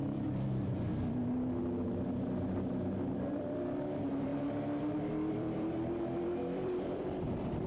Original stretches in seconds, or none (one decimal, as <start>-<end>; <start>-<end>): 1.6-3.1; 4.3-5.3